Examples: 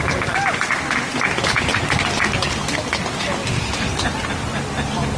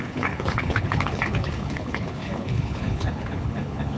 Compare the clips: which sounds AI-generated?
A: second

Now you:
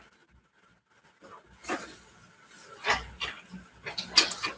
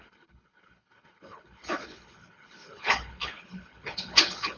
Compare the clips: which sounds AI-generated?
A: second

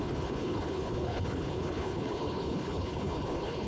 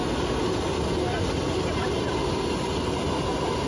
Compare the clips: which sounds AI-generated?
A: first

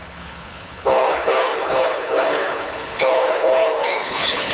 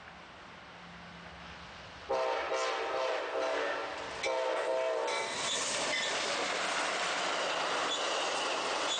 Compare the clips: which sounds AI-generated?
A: first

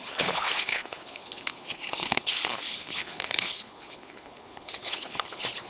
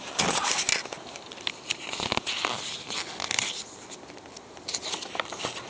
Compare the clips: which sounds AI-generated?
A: first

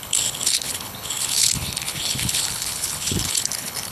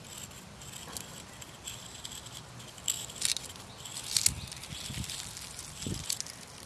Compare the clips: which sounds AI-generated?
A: first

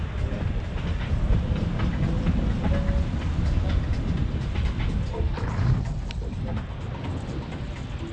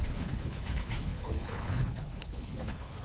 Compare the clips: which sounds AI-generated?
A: second